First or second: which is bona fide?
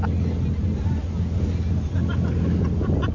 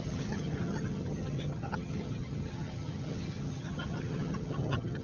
first